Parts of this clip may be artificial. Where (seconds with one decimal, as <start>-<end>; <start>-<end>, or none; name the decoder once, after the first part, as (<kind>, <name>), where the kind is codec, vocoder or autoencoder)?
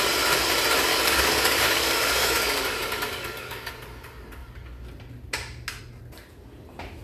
0.9-3.7 (codec, DAC)